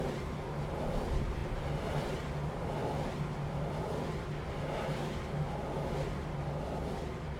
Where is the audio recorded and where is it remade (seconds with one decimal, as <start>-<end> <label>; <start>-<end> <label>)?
0.0-7.4 recorded